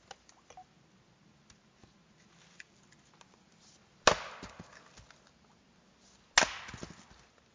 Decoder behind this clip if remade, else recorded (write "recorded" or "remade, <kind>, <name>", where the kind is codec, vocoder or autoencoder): recorded